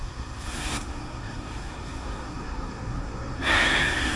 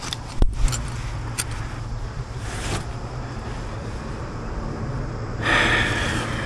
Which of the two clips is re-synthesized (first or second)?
first